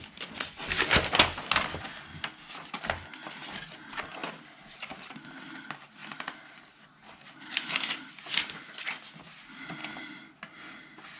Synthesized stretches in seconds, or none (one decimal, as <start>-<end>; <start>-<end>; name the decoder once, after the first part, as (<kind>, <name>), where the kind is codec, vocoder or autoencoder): 6.0-8.6 (vocoder, BigVGAN v2)